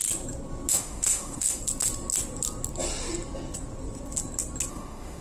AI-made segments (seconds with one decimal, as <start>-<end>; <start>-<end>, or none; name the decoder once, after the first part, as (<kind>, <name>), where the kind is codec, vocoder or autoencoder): 0.7-1.6 (autoencoder, DAC-VAE); 4.7-5.2